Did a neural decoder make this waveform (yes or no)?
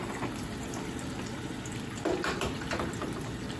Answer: no